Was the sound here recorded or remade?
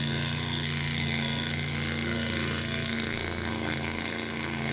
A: remade